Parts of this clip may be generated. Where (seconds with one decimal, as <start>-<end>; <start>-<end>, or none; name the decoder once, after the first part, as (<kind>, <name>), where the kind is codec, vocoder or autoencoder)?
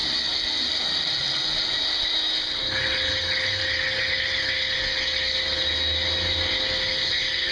none